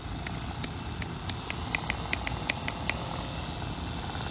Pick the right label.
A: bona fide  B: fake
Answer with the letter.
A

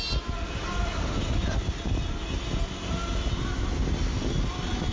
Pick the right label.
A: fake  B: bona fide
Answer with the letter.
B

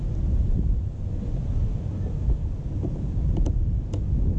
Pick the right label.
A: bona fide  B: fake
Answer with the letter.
A